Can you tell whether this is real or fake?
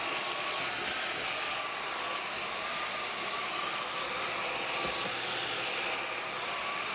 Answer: real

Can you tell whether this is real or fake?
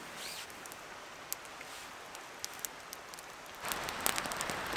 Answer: real